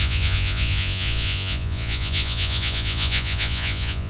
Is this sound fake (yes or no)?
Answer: yes